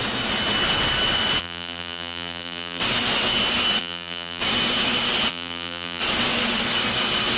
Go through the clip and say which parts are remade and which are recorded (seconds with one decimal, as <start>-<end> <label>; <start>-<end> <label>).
0.0-1.4 recorded; 1.4-2.8 remade; 2.8-3.8 recorded; 3.8-4.4 remade; 4.4-5.3 recorded; 5.3-6.0 remade; 6.0-7.4 recorded